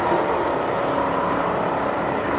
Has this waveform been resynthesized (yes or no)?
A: yes